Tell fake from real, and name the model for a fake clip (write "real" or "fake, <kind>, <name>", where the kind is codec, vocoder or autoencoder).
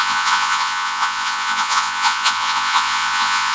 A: fake, vocoder, Vocos